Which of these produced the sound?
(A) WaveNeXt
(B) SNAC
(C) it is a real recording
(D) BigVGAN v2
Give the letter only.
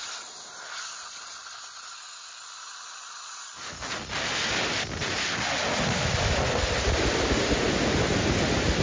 C